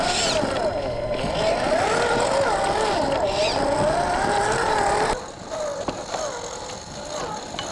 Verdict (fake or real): real